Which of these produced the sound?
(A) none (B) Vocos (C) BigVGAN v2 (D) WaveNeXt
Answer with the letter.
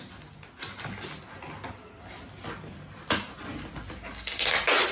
A